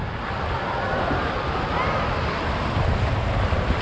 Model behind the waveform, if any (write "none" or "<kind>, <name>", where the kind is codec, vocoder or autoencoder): none